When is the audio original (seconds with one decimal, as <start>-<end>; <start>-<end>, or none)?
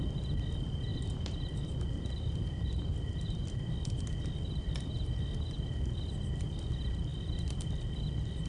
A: 0.0-8.5